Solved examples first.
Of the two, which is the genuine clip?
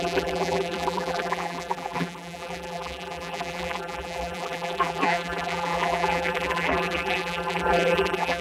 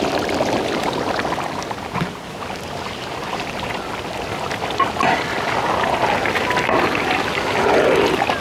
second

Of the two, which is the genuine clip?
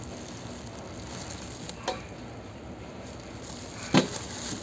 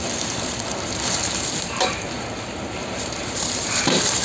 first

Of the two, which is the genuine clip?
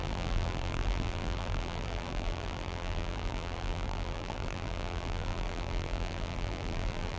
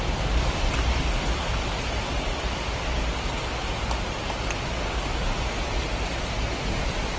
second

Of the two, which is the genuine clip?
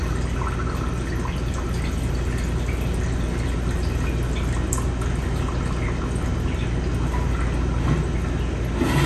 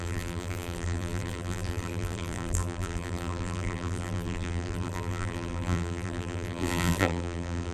first